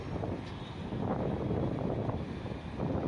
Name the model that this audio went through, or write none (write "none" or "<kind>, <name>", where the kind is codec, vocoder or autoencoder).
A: none